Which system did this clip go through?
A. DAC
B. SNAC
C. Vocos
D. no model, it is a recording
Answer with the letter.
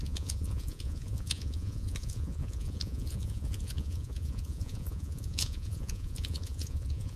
C